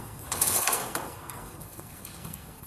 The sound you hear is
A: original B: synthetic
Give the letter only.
B